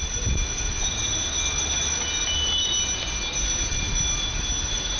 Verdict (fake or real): real